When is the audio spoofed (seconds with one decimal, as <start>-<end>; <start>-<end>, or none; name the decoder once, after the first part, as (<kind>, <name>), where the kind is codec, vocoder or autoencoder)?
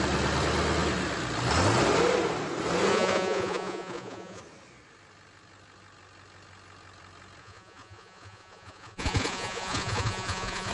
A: 2.9-4.4 (vocoder, Vocos); 7.4-10.7